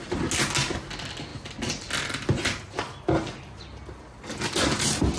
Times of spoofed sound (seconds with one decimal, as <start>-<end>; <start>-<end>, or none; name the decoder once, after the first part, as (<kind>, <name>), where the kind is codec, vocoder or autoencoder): none